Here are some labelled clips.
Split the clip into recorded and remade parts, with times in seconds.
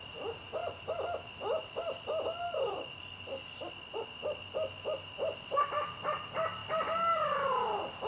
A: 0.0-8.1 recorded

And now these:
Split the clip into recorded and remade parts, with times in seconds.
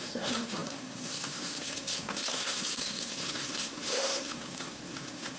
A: 0.0-5.4 remade